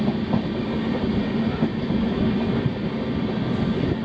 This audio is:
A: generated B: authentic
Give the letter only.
B